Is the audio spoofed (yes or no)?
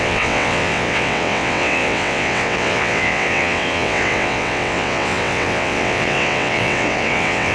yes